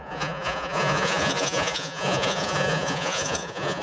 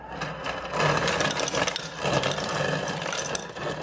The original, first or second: second